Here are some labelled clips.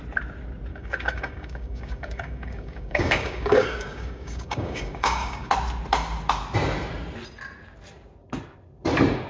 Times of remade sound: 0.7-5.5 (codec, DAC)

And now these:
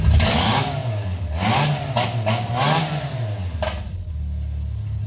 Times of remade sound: none